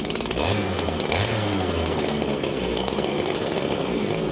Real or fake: fake